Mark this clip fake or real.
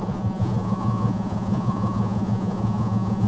fake